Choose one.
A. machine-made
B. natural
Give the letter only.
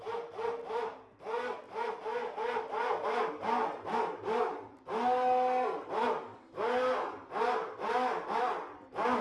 B